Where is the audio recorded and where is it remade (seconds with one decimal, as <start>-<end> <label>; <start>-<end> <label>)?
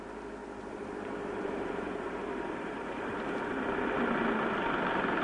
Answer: 0.0-0.4 recorded; 0.4-3.5 remade; 3.5-5.2 recorded